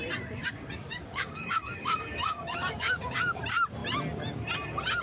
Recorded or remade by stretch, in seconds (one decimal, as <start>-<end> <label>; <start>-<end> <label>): 0.0-0.4 recorded; 0.4-3.4 remade; 3.4-5.0 recorded